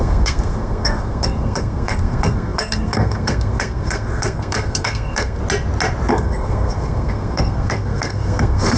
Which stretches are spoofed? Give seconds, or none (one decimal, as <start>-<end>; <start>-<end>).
0.0-5.4; 6.1-8.8